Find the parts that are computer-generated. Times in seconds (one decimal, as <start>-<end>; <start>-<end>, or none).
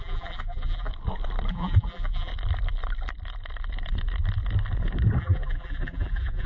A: 0.0-0.9; 1.5-2.3; 5.2-6.5